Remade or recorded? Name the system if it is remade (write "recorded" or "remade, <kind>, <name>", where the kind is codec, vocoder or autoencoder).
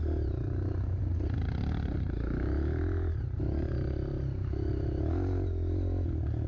recorded